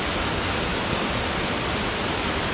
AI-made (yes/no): no